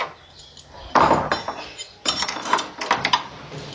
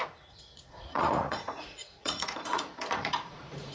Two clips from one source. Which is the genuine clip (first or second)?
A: first